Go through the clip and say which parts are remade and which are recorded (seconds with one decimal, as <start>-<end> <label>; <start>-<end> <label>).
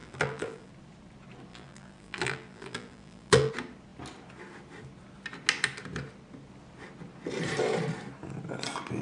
0.0-0.7 remade; 0.7-1.5 recorded; 1.5-3.5 remade; 3.5-9.0 recorded